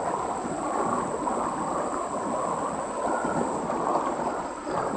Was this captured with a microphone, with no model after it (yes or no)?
yes